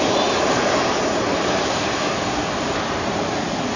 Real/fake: real